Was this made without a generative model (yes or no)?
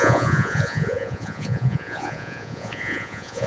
no